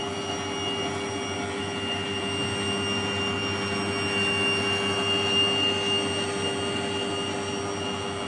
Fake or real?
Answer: real